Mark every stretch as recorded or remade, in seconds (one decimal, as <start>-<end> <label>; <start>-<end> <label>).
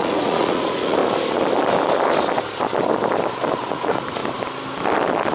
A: 0.0-1.0 remade; 1.0-3.7 recorded; 3.7-4.2 remade; 4.2-5.3 recorded